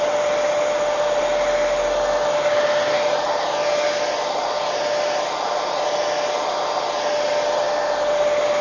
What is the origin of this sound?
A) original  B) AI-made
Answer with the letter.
A